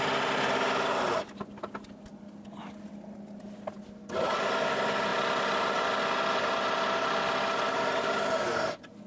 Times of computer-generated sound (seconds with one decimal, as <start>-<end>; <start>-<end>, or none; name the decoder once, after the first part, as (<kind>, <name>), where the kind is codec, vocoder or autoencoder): none